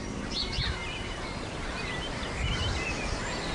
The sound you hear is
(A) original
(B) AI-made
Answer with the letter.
A